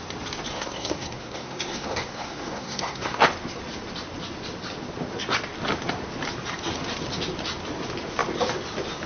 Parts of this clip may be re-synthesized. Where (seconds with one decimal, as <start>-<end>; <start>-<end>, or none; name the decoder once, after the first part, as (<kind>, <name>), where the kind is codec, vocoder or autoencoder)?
0.5-3.2 (codec, SNAC)

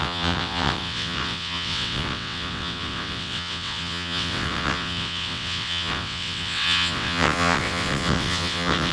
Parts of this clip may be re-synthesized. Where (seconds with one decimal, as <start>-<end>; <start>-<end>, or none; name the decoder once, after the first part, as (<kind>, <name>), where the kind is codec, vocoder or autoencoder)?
0.0-8.9 (vocoder, WaveNeXt)